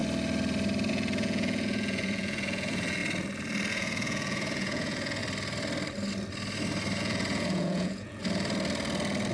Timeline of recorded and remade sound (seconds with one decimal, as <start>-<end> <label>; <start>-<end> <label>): 0.0-0.9 recorded; 0.9-3.0 remade; 3.0-3.7 recorded; 3.7-5.2 remade; 5.2-7.0 recorded; 7.0-8.2 remade; 8.2-9.3 recorded